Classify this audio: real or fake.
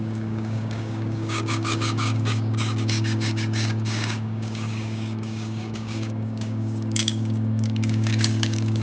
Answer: fake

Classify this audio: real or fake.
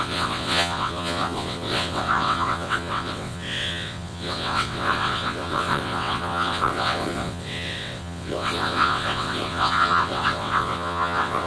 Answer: fake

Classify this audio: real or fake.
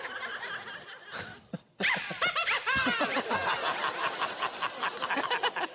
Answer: fake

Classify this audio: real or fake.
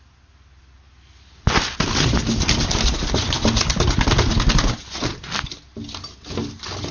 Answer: real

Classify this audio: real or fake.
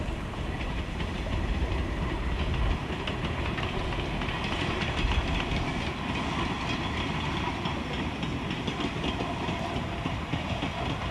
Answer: real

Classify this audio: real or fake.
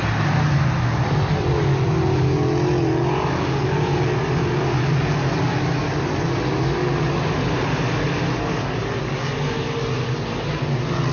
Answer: real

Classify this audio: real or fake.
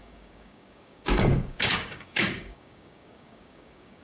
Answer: fake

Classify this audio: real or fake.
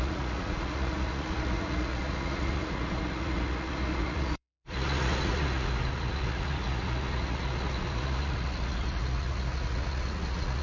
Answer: fake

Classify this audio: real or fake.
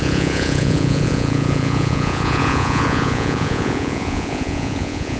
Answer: fake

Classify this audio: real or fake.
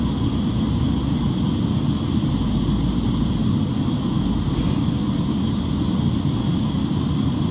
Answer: real